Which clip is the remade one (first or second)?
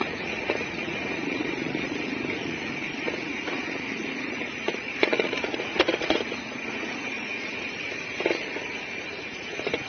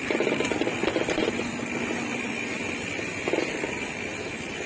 first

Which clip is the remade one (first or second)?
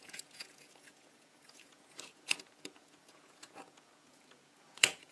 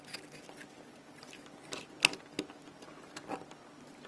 first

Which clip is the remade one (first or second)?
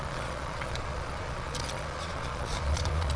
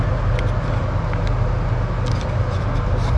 first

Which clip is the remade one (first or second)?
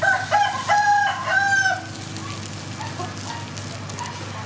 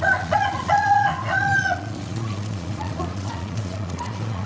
second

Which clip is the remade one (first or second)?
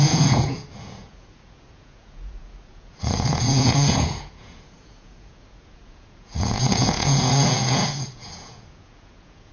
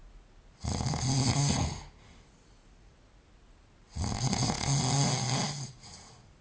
first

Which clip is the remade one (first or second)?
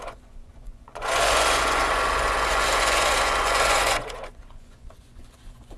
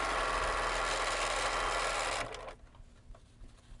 first